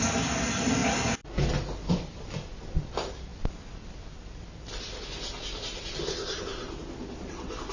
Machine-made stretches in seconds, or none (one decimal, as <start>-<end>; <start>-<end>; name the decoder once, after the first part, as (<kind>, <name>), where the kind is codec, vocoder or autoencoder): none